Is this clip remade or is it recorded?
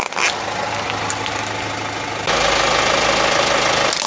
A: recorded